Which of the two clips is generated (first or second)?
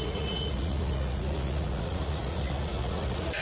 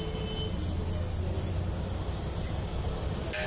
first